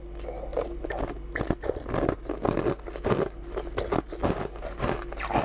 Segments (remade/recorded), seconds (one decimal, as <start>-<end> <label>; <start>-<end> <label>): 0.0-5.4 recorded